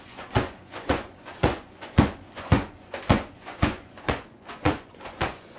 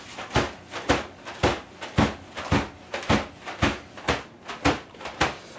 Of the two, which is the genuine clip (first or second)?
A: second